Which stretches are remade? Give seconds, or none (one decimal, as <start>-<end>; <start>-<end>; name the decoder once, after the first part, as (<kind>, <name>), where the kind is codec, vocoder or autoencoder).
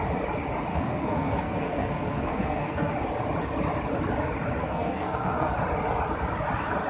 0.7-2.9 (codec, SNAC); 4.6-5.5